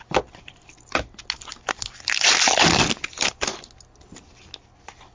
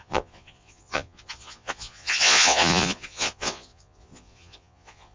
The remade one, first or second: second